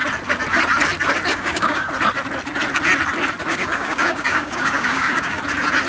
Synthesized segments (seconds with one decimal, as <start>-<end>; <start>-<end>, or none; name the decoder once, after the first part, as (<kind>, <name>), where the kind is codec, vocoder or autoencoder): 1.3-1.9 (codec, DAC); 3.5-5.4